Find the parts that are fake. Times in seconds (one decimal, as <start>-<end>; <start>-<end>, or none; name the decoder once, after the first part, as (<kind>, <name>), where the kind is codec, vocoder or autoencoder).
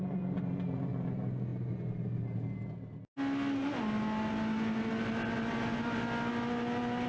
none